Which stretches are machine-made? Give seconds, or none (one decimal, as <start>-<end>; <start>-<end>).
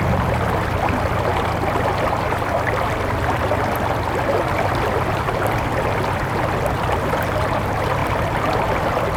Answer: none